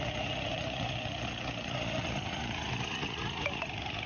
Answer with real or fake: fake